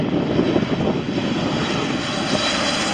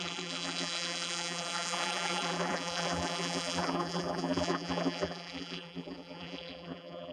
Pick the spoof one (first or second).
second